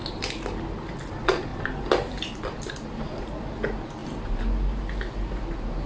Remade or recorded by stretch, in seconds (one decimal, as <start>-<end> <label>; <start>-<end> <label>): 0.0-5.9 recorded